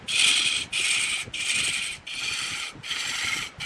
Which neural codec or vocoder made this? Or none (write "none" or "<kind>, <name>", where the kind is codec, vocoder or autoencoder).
none